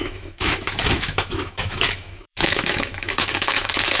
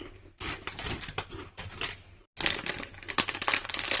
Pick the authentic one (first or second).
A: second